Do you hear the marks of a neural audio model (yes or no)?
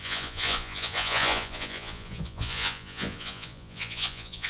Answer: yes